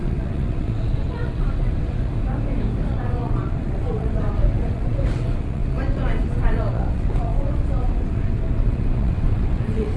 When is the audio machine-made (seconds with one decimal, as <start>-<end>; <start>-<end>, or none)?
0.0-2.1; 2.9-10.0